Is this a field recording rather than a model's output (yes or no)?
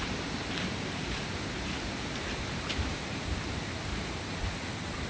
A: no